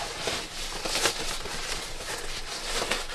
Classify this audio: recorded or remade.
recorded